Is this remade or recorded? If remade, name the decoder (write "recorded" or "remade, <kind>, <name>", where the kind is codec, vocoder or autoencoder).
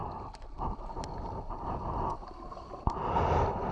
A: recorded